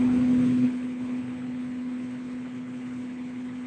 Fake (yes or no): yes